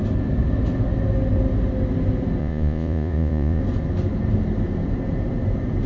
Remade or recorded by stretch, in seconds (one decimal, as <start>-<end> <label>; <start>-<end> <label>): 0.0-2.4 recorded; 2.4-3.6 remade; 3.6-5.9 recorded